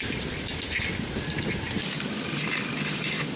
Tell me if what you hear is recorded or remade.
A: recorded